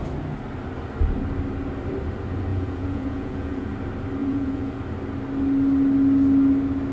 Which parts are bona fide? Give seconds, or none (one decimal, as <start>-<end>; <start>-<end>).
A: 0.0-2.5; 3.7-4.2; 4.8-6.9